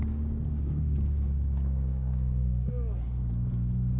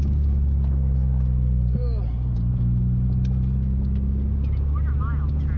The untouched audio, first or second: second